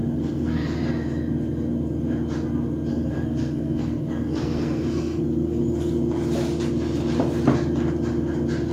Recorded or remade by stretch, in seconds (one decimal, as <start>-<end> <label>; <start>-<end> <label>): 0.0-0.8 remade; 0.8-2.9 recorded; 2.9-5.6 remade; 5.6-8.7 recorded